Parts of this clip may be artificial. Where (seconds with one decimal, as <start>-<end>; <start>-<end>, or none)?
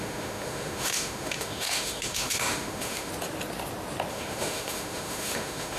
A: 0.0-3.1; 4.1-5.8